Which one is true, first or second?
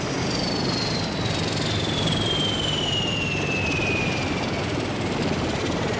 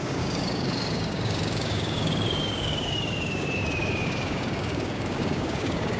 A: first